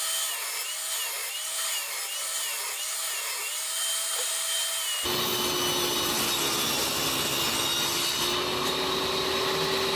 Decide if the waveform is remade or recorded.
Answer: recorded